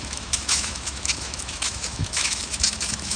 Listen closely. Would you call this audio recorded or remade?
remade